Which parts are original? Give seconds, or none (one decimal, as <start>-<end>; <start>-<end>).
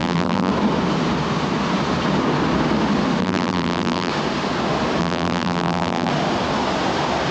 0.5-3.2; 4.1-5.0; 6.1-7.3